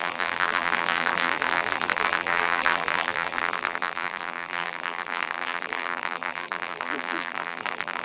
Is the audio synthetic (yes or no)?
yes